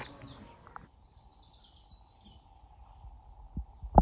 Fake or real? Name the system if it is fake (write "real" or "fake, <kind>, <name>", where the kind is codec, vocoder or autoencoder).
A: real